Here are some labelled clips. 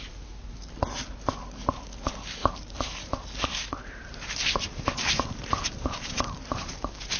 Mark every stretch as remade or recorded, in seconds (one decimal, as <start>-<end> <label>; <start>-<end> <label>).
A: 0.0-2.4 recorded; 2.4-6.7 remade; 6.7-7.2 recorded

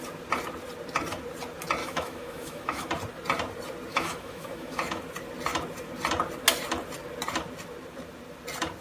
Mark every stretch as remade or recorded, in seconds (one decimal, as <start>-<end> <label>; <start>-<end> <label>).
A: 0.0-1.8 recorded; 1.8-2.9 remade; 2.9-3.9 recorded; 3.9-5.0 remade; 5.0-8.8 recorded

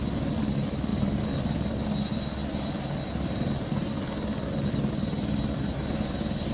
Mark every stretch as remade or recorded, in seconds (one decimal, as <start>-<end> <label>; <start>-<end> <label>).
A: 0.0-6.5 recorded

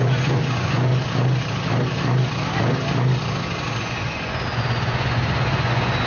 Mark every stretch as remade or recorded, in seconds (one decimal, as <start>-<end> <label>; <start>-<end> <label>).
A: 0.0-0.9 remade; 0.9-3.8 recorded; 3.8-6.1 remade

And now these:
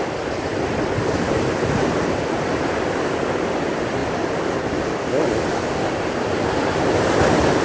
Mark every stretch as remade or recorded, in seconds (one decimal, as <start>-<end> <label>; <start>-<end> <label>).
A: 0.0-7.6 recorded

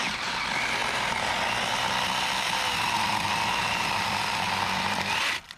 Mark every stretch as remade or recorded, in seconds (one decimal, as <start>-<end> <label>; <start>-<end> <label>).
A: 0.0-5.6 recorded

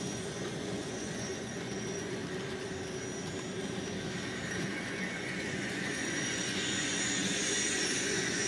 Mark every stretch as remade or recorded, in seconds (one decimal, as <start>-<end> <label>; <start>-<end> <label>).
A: 0.0-2.2 remade; 2.2-4.5 recorded; 4.5-8.5 remade